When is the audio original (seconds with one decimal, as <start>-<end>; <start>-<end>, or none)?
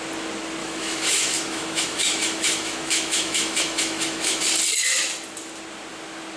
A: 0.0-0.6; 4.4-6.4